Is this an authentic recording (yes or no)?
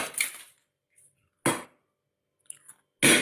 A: yes